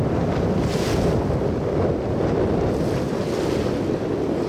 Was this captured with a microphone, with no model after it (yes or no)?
yes